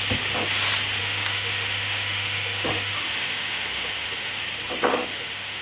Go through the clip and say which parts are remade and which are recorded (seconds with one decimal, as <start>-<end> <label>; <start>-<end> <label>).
0.0-1.0 recorded; 1.0-4.4 remade; 4.4-4.9 recorded; 4.9-5.6 remade